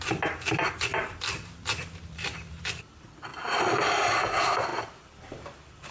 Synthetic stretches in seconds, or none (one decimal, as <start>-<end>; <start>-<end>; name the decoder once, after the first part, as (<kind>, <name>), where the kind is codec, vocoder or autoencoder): 0.9-2.8 (vocoder, BigVGAN v2); 3.3-4.2; 4.7-5.9